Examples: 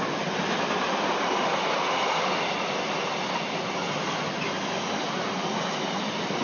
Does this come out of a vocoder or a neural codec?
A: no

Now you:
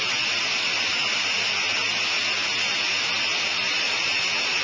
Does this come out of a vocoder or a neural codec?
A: no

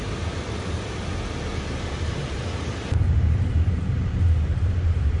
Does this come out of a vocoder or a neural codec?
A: no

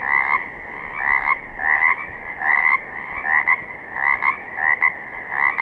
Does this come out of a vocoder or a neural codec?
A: no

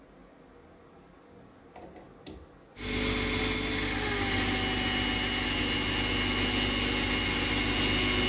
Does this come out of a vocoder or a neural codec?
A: no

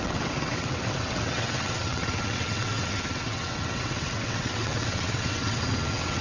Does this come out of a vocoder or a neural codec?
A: yes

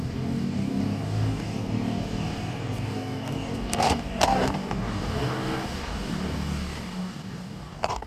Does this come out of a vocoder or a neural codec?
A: yes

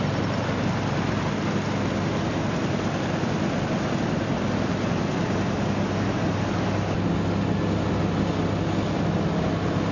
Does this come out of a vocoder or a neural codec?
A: no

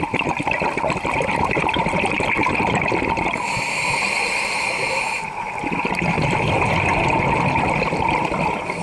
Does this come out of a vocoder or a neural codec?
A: no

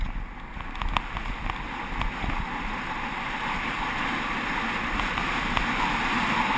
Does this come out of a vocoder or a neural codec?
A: no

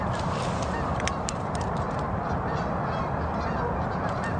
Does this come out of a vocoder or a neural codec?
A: no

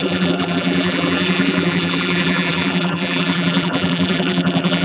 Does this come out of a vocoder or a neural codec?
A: yes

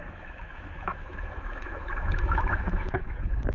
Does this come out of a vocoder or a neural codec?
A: yes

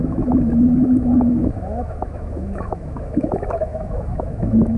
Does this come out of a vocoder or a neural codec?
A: yes